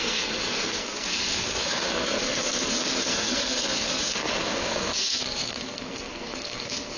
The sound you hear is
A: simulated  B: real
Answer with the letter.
A